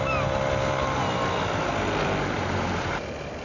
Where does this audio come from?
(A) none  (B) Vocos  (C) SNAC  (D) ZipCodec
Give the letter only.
A